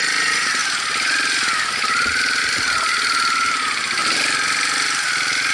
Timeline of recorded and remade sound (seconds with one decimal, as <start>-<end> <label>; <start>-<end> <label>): 0.0-4.0 recorded; 4.0-5.5 remade